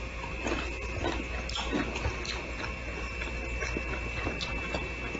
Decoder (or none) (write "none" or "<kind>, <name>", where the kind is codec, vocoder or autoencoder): none